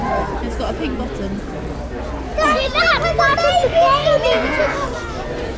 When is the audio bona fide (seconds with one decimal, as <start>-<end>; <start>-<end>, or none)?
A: 0.0-5.6